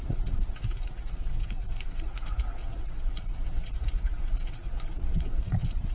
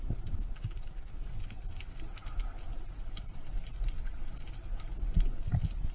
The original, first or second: second